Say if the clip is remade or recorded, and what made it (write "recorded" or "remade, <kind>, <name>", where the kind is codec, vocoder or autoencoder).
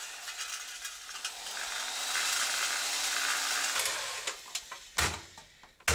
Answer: recorded